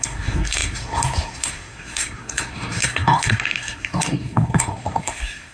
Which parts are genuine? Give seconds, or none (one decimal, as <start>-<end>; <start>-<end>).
none